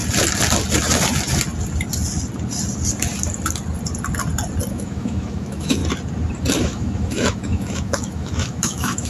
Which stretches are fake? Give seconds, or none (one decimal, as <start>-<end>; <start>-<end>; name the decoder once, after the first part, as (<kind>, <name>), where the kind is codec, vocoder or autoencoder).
4.7-5.8 (autoencoder, DAC-VAE); 6.6-9.1